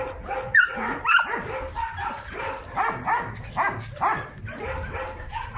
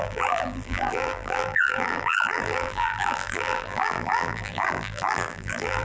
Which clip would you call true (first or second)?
first